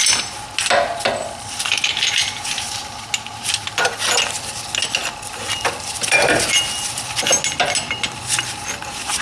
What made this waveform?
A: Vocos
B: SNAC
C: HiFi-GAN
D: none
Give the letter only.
D